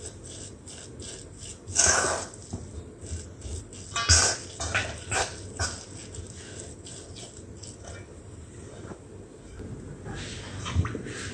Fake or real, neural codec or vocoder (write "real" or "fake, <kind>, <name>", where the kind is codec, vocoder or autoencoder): real